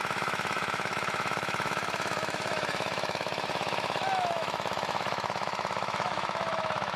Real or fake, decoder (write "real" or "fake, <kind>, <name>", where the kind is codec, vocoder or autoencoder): fake, autoencoder, DAC-VAE